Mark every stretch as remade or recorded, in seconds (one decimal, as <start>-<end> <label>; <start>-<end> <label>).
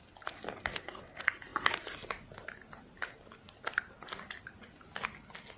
0.0-0.9 remade; 0.9-5.6 recorded